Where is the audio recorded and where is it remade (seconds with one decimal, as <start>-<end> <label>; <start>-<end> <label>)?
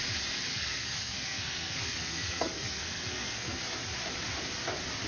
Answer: 0.0-0.5 recorded; 0.5-3.6 remade; 3.6-5.1 recorded